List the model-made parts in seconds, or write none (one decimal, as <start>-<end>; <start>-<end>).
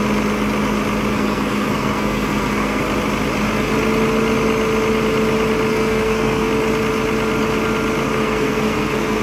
1.1-2.8; 5.7-6.5; 8.0-9.2